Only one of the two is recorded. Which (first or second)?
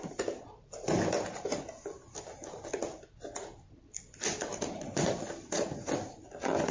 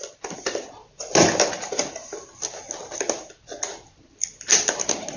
first